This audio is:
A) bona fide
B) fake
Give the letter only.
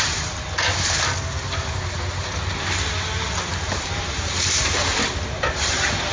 A